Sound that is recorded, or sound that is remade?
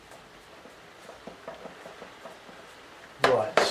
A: recorded